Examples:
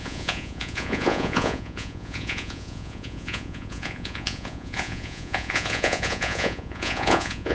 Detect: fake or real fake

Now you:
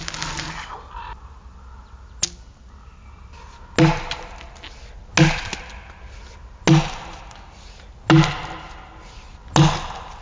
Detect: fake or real real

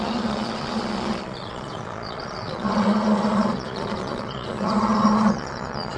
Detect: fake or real fake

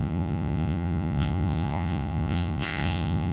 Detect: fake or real fake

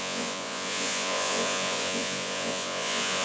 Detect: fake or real fake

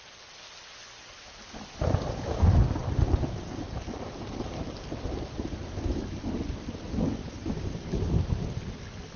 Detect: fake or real real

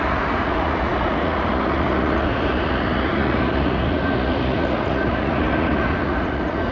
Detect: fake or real fake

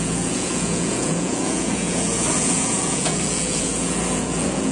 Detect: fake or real fake